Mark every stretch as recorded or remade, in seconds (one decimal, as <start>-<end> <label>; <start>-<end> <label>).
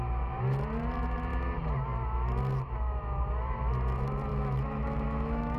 0.0-4.3 recorded; 4.3-5.6 remade